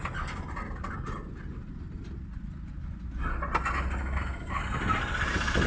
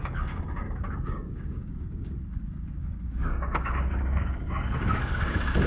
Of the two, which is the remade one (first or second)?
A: second